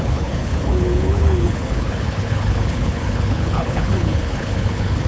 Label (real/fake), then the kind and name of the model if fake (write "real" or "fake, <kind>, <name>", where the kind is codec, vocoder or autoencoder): fake, codec, HILCodec